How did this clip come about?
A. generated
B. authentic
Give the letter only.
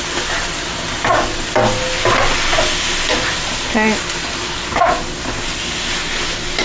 B